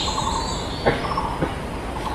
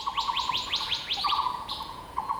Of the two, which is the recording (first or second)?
first